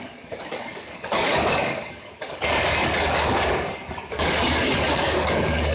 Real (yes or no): no